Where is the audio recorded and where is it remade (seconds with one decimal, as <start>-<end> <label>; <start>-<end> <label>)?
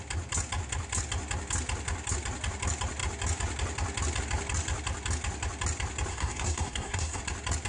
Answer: 0.0-6.1 recorded; 6.1-7.2 remade; 7.2-7.7 recorded